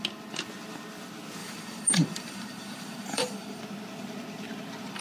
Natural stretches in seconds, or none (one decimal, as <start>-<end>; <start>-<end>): 0.0-1.4; 3.6-5.0